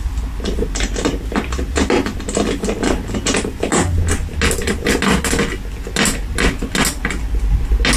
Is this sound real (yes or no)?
yes